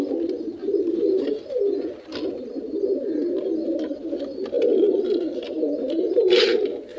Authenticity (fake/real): real